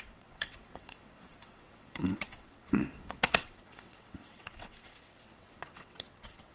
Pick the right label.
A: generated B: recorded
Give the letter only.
A